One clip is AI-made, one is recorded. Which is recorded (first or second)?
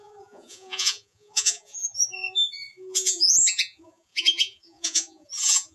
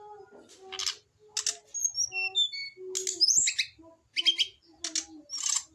second